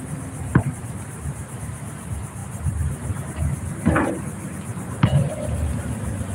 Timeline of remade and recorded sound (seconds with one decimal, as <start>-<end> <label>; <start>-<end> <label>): 0.0-0.5 recorded; 0.5-1.8 remade; 1.8-6.3 recorded